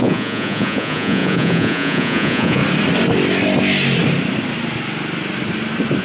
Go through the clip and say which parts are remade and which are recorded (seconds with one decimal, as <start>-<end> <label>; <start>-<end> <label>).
0.0-2.6 remade; 2.6-6.0 recorded